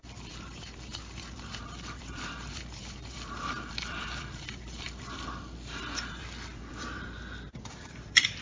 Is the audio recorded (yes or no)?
no